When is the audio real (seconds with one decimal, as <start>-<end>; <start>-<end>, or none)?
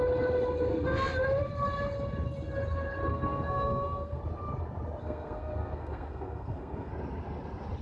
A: 0.0-0.7; 1.2-3.1; 4.2-5.0; 6.9-7.8